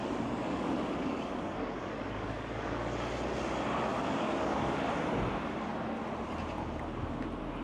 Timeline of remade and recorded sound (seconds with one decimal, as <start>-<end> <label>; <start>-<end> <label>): 0.0-3.1 remade; 3.1-3.9 recorded; 3.9-4.8 remade; 4.8-7.6 recorded